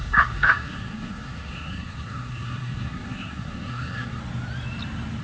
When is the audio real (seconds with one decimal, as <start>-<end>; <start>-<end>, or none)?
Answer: 4.2-5.2